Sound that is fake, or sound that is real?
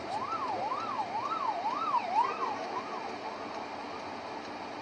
real